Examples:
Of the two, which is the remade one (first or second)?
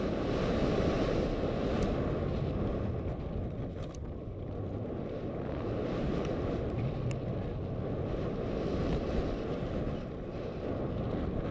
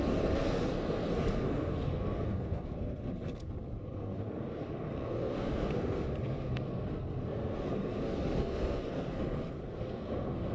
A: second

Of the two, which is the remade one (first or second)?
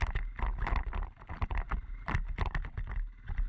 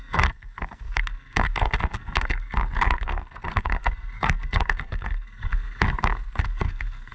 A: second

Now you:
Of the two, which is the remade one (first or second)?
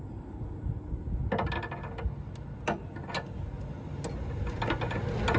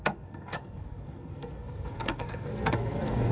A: second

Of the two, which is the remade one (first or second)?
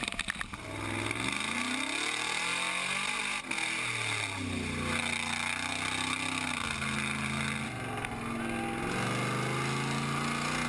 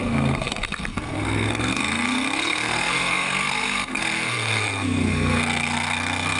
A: second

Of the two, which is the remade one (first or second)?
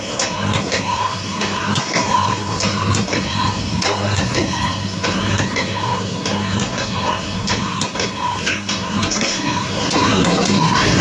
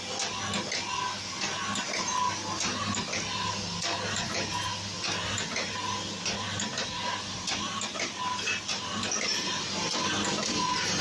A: first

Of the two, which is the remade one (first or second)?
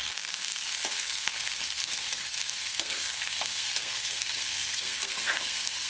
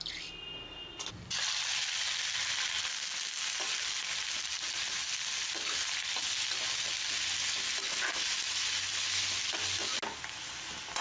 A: first